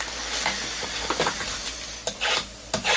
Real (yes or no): yes